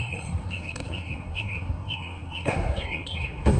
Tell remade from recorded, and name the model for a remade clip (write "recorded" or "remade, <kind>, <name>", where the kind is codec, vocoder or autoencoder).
remade, codec, SNAC